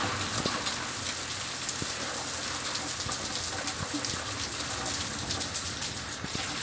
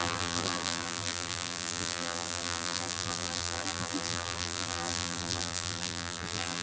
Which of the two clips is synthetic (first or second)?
second